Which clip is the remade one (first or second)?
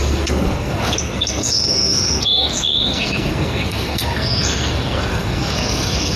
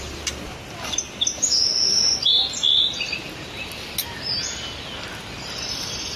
first